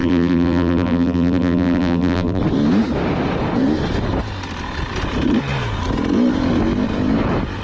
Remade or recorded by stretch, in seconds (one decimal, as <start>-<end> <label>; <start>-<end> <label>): 0.0-2.4 remade; 2.4-7.6 recorded